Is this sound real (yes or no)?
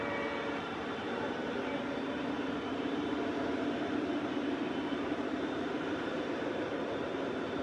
no